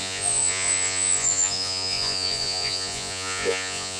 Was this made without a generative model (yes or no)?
no